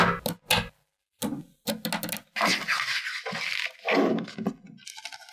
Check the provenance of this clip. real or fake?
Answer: real